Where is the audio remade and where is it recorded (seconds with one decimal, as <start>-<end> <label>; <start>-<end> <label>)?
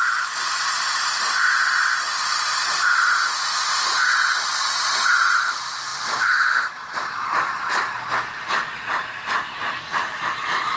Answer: 0.0-10.8 recorded